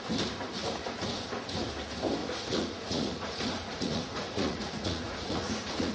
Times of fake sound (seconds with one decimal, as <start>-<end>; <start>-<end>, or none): 0.6-1.3; 2.2-5.9